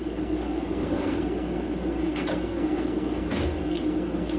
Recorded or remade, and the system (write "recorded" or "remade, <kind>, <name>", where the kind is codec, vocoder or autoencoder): remade, codec, SNAC